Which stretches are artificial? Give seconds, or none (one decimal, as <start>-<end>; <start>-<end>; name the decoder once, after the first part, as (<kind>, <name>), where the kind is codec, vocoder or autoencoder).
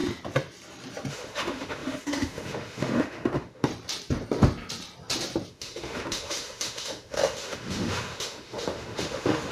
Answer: 1.1-3.7 (autoencoder, DAC-VAE); 5.5-9.5